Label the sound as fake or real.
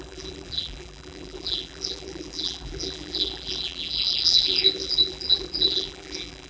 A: fake